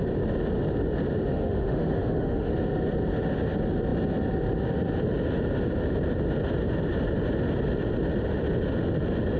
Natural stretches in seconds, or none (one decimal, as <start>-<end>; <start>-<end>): 0.0-1.3; 2.5-9.4